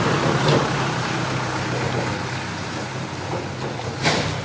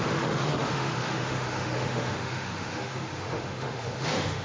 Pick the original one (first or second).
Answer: first